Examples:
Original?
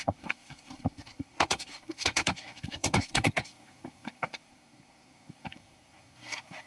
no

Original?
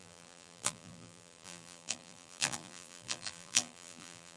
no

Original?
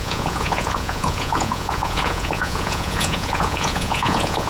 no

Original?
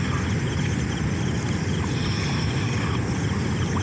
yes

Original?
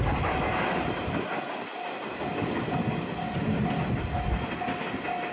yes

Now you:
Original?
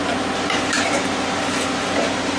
yes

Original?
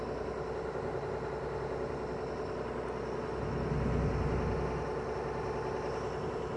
yes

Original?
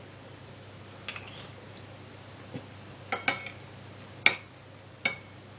yes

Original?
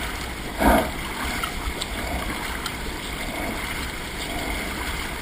yes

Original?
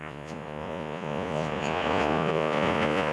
no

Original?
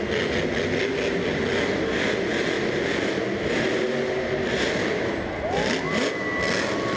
yes